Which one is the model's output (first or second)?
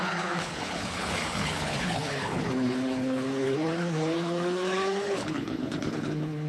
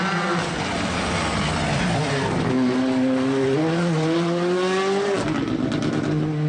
first